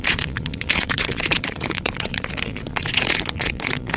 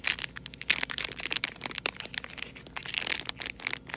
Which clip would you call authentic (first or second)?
second